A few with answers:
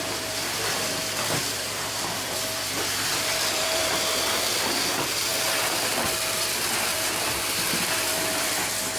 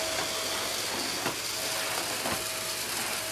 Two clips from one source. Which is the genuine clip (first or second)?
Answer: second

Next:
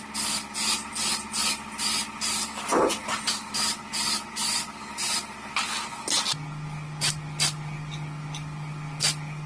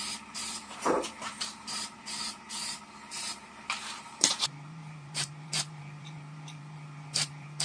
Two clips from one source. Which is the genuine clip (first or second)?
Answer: first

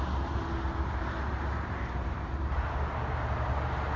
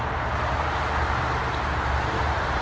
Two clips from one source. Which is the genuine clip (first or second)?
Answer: first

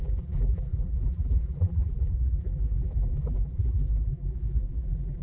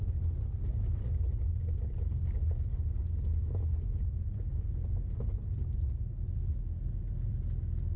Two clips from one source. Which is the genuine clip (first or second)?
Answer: second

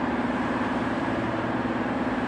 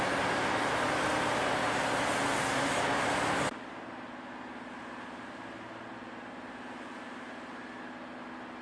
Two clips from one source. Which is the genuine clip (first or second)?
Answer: second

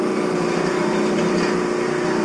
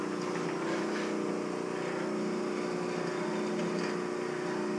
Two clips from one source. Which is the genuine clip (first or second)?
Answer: second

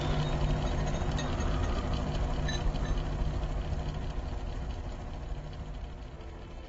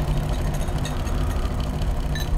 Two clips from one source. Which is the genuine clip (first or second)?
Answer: first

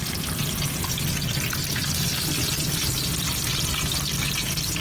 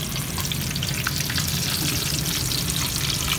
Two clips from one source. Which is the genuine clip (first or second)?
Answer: first